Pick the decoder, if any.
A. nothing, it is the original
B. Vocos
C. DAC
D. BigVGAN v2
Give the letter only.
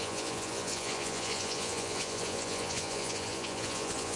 B